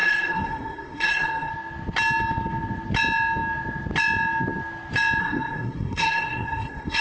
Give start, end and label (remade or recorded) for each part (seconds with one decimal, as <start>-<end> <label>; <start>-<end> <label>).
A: 0.0-1.5 remade; 1.5-5.2 recorded; 5.2-7.0 remade